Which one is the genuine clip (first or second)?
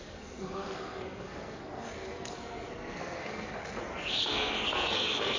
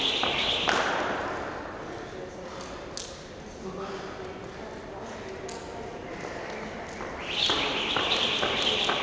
second